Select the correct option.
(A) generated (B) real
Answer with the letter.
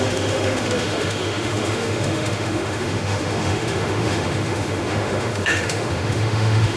A